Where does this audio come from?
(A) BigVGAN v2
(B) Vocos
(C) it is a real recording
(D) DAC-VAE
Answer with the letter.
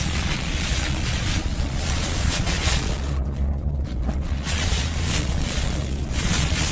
B